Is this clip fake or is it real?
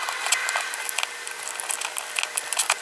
real